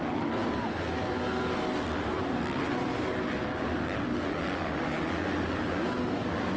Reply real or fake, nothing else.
real